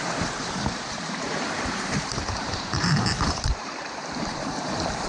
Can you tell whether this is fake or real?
fake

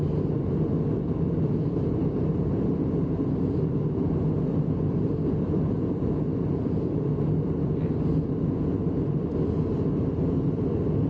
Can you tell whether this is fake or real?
real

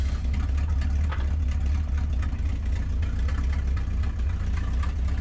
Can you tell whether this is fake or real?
real